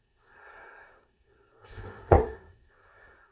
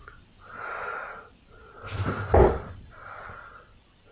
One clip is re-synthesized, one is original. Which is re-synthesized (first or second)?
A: first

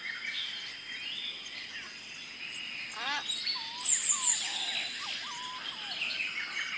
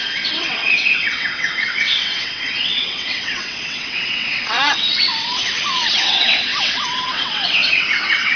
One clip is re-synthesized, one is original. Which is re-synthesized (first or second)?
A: second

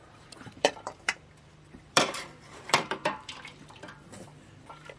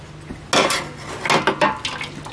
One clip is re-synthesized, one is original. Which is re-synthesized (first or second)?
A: first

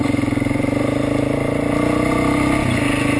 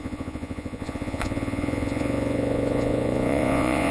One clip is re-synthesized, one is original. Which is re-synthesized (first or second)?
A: second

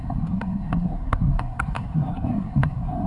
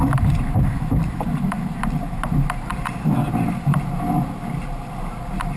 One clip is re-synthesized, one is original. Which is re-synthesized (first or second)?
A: first